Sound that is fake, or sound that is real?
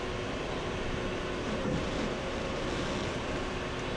real